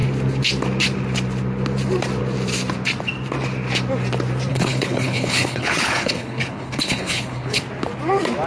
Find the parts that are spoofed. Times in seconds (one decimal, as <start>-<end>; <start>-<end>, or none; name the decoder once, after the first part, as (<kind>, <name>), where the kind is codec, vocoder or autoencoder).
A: 4.5-7.6 (codec, HILCodec)